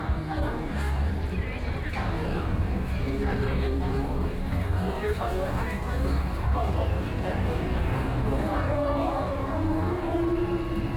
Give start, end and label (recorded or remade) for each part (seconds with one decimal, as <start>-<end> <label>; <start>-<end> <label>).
0.0-1.1 remade; 1.1-1.9 recorded; 1.9-10.2 remade; 10.2-11.0 recorded